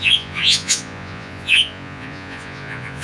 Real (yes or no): no